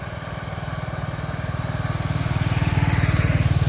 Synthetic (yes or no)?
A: no